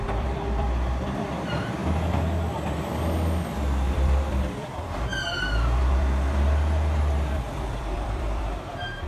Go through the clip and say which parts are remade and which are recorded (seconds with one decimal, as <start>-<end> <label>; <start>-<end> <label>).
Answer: 0.0-1.8 remade; 1.8-3.9 recorded; 3.9-5.1 remade; 5.1-7.0 recorded; 7.0-9.1 remade